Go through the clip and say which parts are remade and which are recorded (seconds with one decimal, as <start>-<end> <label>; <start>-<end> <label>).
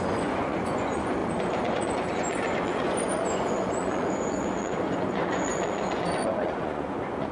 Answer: 0.0-7.3 remade